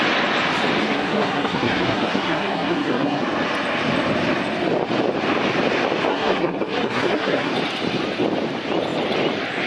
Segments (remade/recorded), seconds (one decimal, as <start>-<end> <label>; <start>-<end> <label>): 0.0-0.8 recorded; 0.8-3.2 remade; 3.2-6.1 recorded; 6.1-7.5 remade; 7.5-9.7 recorded